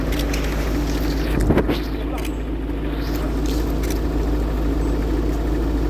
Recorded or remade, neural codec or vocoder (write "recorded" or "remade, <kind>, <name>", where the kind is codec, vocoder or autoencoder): recorded